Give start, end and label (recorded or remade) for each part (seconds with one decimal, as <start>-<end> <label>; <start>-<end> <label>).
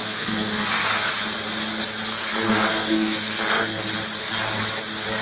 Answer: 0.0-1.1 remade; 1.1-2.1 recorded; 2.1-3.8 remade; 3.8-5.2 recorded